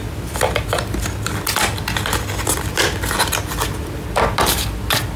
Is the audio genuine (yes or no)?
yes